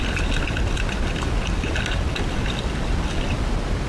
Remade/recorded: recorded